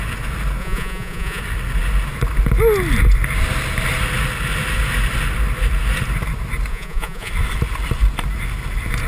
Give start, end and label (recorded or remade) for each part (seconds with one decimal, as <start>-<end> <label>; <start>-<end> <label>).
0.0-0.6 recorded; 0.6-1.4 remade; 1.4-6.7 recorded; 6.7-7.3 remade; 7.3-9.1 recorded